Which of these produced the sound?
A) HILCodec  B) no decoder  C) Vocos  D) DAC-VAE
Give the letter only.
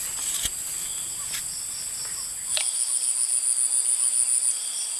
B